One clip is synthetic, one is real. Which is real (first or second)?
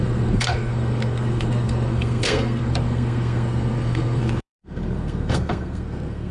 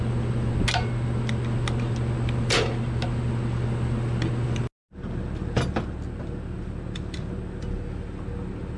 second